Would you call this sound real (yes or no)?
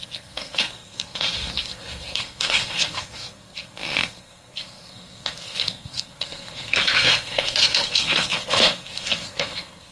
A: no